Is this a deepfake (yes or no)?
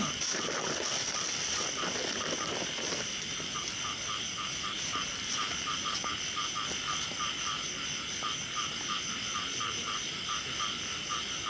no